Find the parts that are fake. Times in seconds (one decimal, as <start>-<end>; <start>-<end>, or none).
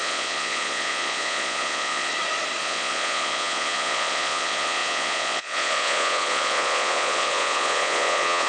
0.0-2.1; 2.6-8.5